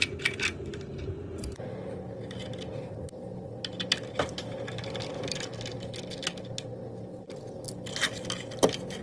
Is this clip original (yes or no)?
yes